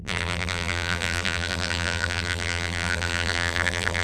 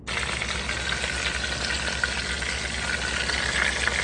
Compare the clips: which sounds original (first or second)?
second